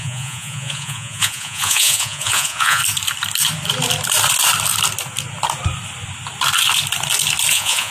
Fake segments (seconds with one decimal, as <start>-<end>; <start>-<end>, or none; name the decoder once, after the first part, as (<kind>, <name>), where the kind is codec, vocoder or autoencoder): 0.0-2.8 (vocoder, Vocos); 7.5-7.9